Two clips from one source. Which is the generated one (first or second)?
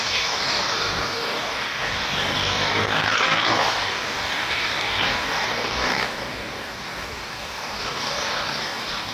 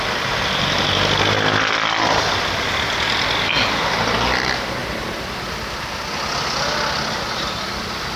first